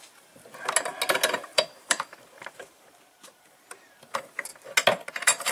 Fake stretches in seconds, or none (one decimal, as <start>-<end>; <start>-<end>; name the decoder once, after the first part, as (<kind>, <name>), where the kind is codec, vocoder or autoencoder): 0.0-0.4 (vocoder, BigVGAN v2); 1.4-4.5; 5.1-5.5